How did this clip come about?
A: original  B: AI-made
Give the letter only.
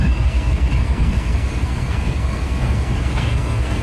B